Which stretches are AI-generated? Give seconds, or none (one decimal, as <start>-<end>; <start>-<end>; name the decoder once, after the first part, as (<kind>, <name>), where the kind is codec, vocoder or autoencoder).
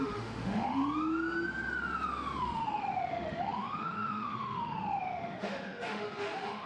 0.0-0.8 (autoencoder, DAC-VAE); 2.4-6.7